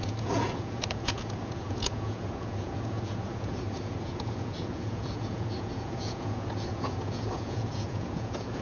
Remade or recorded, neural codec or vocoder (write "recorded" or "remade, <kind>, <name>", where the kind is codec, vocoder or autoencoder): remade, vocoder, Vocos